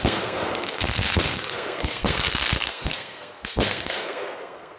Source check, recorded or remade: remade